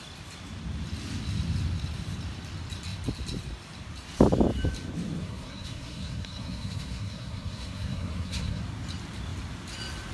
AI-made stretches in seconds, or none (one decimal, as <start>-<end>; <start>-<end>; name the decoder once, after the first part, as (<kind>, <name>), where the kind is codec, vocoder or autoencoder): 5.2-8.6 (codec, SNAC)